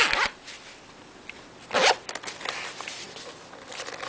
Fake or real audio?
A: real